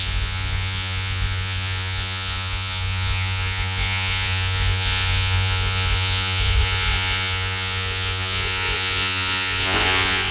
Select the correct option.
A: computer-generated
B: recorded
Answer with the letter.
A